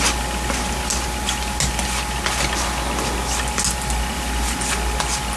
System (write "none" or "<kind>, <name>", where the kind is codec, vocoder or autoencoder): none